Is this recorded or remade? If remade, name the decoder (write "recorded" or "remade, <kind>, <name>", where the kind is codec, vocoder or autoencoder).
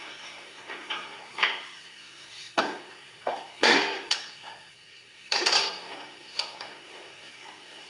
remade, codec, SNAC